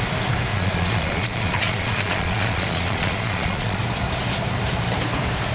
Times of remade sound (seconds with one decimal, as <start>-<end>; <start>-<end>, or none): 0.5-3.8